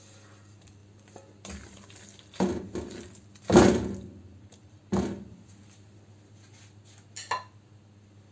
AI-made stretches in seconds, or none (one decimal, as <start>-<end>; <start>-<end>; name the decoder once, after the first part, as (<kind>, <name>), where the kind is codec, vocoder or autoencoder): none